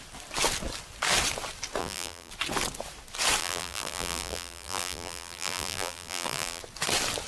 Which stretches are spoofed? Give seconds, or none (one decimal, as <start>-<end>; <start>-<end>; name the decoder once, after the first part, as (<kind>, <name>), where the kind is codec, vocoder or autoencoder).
1.8-2.3 (vocoder, BigVGAN v2); 3.4-6.6